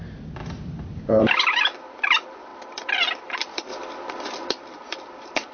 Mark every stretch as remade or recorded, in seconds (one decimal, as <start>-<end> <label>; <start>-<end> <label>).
0.0-3.7 remade; 3.7-4.5 recorded; 4.5-5.5 remade